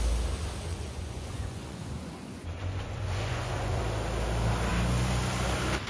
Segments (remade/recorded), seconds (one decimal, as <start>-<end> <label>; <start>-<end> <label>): 0.0-0.7 recorded; 0.7-3.8 remade; 3.8-5.9 recorded